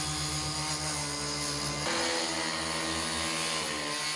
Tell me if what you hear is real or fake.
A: real